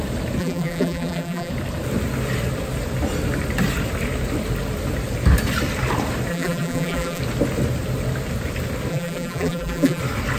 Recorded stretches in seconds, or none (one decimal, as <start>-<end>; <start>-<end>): 0.0-0.4; 1.5-6.3; 7.2-8.9; 10.0-10.4